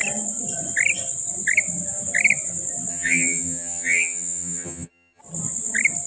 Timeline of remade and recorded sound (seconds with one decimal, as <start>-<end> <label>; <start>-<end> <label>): 0.0-2.9 recorded; 2.9-5.2 remade; 5.2-6.1 recorded